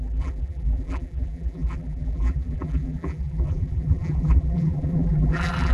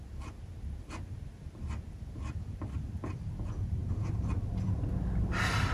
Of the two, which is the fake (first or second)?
first